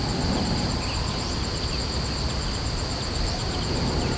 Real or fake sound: real